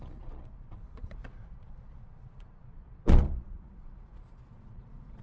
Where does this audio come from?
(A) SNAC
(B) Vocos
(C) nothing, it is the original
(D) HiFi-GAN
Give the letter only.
B